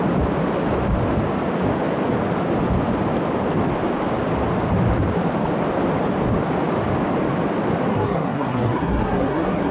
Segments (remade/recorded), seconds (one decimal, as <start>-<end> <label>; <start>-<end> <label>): 0.0-7.9 recorded; 7.9-9.7 remade